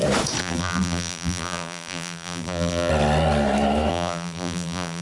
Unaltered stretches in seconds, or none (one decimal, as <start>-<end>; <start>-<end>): 0.0-0.4; 2.9-3.9